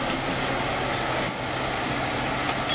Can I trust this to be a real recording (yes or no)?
yes